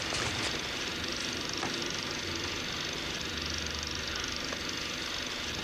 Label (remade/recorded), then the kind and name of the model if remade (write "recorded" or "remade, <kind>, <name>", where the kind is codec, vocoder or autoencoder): recorded